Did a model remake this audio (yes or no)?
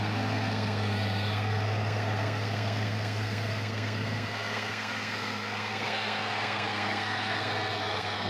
yes